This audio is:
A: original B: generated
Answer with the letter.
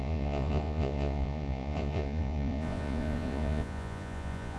B